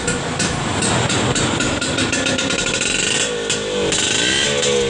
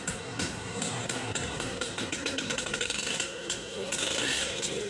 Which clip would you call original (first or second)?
first